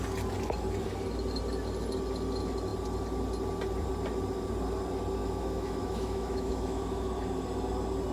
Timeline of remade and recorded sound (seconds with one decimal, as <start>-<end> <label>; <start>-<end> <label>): 0.0-5.2 recorded; 5.2-7.1 remade; 7.1-8.1 recorded